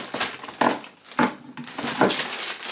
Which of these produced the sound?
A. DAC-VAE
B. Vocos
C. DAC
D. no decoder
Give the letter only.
D